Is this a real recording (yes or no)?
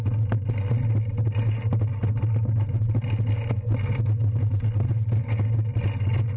yes